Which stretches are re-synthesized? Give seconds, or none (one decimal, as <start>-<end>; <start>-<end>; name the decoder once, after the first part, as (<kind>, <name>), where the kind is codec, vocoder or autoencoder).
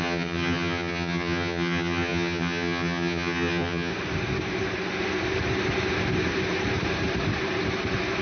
0.0-3.9 (vocoder, HiFi-GAN)